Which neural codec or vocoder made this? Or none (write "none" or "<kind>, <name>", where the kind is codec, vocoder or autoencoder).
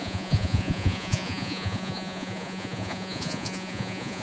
vocoder, Vocos